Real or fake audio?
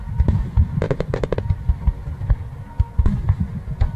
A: real